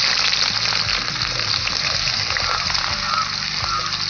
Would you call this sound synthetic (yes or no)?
no